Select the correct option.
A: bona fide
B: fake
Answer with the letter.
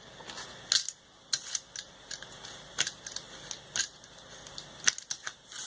A